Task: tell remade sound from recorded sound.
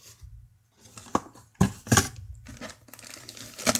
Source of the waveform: recorded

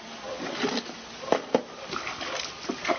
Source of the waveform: recorded